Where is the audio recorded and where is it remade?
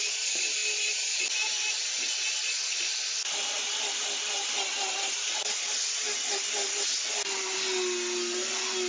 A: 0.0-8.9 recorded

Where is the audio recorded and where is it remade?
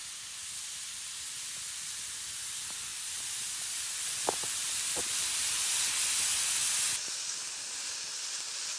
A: 0.0-8.8 recorded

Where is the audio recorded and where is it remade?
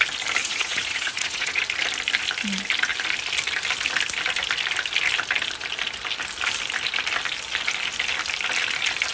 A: 0.0-0.4 recorded; 0.4-1.6 remade; 1.6-9.1 recorded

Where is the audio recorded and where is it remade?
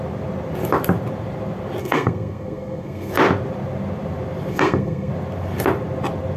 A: 0.0-1.8 recorded; 1.8-3.1 remade; 3.1-4.5 recorded; 4.5-5.1 remade; 5.1-6.4 recorded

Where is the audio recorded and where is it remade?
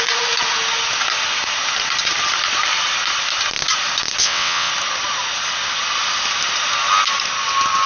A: 0.0-4.2 recorded; 4.2-4.7 remade; 4.7-7.9 recorded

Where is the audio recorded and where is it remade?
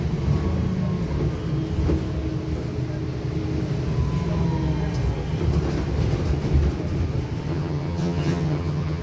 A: 0.0-7.5 recorded; 7.5-9.0 remade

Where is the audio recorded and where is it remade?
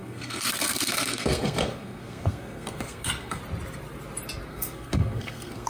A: 0.0-3.4 remade; 3.4-4.5 recorded; 4.5-5.7 remade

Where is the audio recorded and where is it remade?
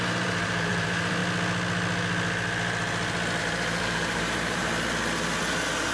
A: 0.0-1.2 remade; 1.2-3.4 recorded; 3.4-4.7 remade; 4.7-5.9 recorded